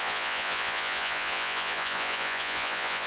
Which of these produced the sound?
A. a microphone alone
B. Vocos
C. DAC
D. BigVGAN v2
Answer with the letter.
B